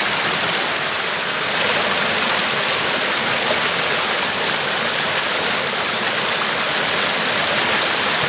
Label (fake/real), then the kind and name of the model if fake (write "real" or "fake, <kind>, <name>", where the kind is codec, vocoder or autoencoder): real